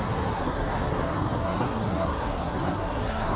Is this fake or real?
fake